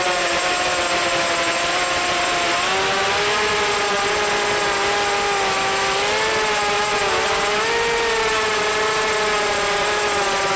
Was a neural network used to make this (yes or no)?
no